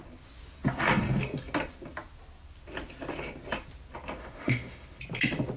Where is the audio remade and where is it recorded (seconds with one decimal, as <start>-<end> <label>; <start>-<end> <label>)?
0.0-4.2 recorded; 4.2-5.0 remade; 5.0-5.6 recorded